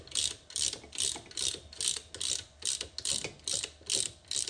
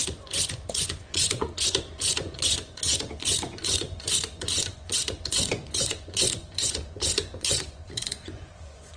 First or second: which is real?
first